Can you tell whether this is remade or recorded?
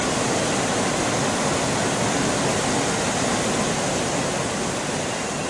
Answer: recorded